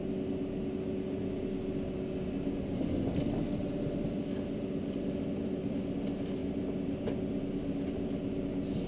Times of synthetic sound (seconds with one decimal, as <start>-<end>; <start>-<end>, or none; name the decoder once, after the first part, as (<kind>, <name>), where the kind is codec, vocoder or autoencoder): none